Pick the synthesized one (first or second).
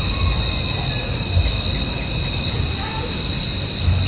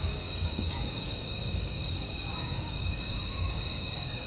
second